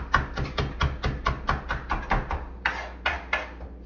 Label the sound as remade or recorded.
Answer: recorded